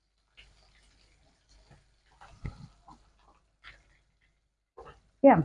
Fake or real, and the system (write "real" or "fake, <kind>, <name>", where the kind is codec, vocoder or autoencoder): real